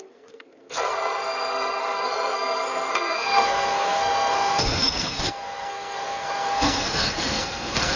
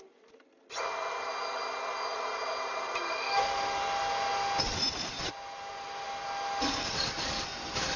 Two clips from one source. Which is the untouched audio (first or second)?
second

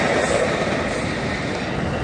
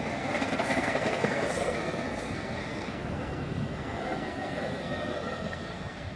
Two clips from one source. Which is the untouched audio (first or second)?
first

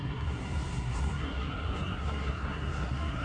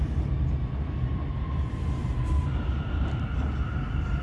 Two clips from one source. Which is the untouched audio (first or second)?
second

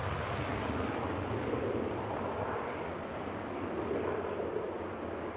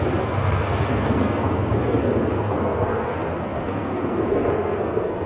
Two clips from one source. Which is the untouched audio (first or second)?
first